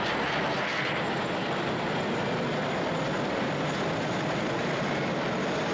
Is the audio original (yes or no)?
yes